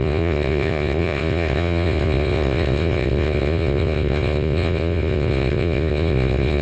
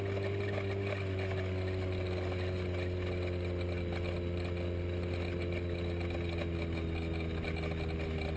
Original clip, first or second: second